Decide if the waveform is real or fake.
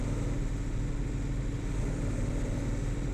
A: real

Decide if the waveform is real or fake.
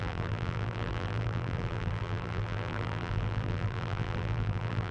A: fake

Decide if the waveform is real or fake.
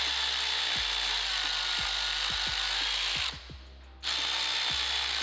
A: real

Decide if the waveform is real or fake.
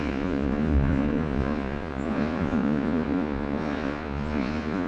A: fake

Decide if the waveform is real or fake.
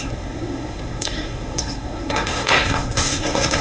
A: fake